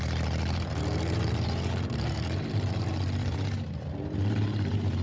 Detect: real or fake fake